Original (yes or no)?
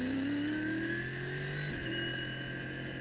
yes